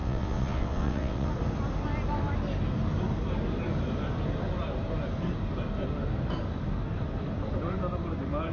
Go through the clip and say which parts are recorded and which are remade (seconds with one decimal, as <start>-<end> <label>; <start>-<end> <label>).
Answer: 0.0-1.3 remade; 1.3-8.5 recorded